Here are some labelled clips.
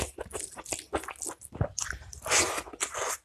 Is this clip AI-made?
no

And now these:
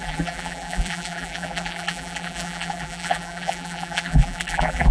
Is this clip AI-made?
yes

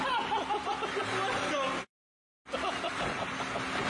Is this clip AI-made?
no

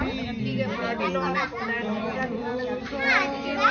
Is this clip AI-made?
no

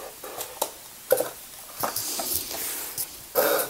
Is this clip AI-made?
no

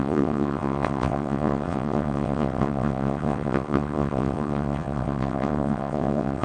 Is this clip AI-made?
yes